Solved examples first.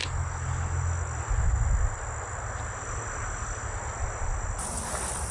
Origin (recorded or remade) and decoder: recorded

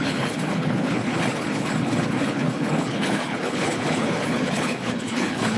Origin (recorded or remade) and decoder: remade, codec, HILCodec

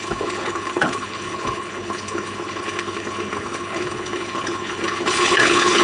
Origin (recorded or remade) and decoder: remade, codec, HILCodec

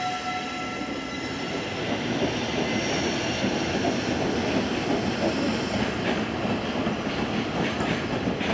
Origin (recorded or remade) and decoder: recorded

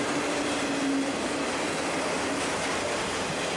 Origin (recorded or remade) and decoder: recorded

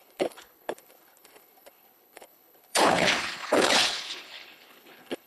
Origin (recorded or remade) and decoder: remade, codec, HILCodec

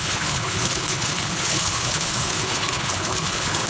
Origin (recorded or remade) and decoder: remade, codec, HILCodec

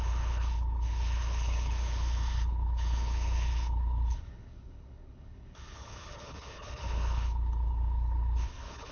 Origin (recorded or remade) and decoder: remade, codec, HILCodec